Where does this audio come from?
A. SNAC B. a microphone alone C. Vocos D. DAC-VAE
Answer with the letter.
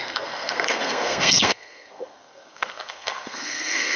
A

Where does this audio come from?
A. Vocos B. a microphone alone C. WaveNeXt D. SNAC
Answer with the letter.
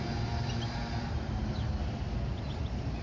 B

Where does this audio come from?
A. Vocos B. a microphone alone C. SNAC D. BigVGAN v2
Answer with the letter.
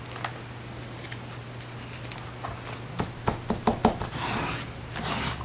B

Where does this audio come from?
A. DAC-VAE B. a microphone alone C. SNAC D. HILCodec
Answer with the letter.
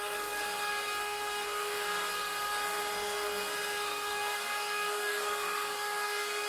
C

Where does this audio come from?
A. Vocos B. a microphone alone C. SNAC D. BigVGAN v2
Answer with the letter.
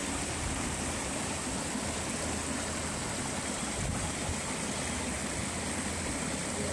B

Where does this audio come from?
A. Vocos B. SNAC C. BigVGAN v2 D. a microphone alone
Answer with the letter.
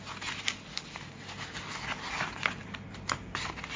D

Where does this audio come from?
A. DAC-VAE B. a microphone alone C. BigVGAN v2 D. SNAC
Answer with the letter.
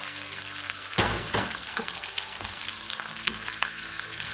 D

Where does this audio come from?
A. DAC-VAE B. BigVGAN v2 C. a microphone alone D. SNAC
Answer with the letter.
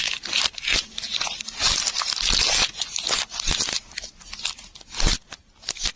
C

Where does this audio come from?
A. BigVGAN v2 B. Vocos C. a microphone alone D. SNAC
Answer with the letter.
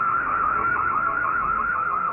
D